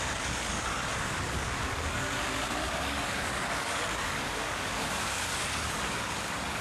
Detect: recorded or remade remade